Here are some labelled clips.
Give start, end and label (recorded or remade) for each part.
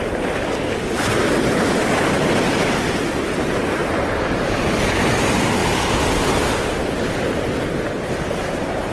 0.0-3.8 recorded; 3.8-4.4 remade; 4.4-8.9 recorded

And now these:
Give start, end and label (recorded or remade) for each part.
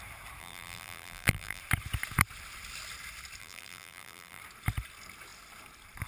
0.0-0.4 recorded; 0.4-1.6 remade; 1.6-3.4 recorded; 3.4-4.4 remade; 4.4-6.1 recorded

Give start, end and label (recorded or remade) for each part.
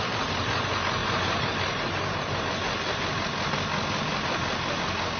0.0-1.0 recorded; 1.0-2.4 remade; 2.4-5.2 recorded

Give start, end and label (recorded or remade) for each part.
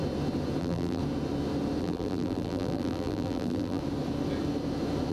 0.0-0.6 recorded; 0.6-1.0 remade; 1.0-1.8 recorded; 1.8-3.8 remade; 3.8-5.1 recorded